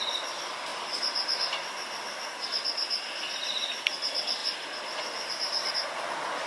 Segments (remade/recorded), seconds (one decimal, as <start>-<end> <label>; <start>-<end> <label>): 0.0-4.4 recorded; 4.4-5.7 remade; 5.7-6.5 recorded